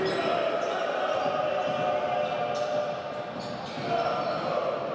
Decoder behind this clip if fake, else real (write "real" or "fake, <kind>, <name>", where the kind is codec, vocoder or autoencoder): real